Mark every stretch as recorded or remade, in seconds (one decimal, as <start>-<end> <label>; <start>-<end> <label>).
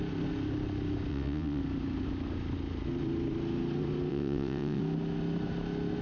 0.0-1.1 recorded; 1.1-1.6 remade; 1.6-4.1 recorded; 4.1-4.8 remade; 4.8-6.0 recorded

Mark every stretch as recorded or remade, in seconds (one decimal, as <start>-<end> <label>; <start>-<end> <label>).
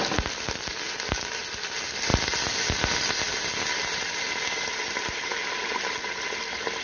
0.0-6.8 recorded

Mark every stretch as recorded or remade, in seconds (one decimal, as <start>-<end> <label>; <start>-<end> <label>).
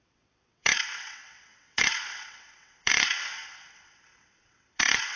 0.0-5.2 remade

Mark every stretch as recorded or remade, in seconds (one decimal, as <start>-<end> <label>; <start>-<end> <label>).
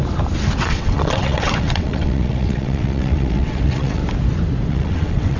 0.0-0.6 recorded; 0.6-4.0 remade; 4.0-4.7 recorded; 4.7-5.4 remade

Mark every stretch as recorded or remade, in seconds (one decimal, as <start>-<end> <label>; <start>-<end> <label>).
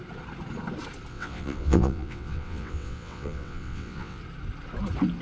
0.0-1.1 recorded; 1.1-4.2 remade; 4.2-5.2 recorded